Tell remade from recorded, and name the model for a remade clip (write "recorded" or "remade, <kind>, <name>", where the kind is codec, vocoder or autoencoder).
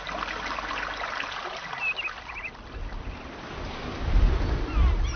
recorded